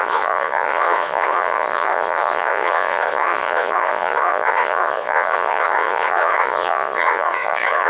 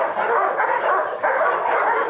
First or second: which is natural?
second